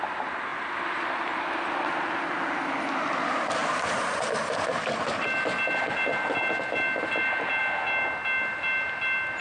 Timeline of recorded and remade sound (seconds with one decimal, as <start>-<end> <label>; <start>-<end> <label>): 0.0-9.4 recorded